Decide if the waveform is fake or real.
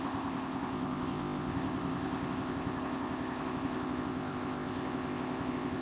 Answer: fake